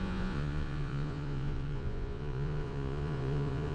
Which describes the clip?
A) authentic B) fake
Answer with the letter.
B